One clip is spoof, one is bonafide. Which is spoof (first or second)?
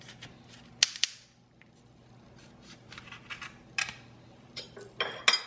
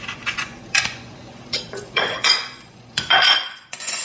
second